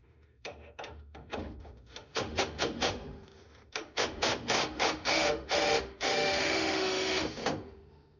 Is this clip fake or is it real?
fake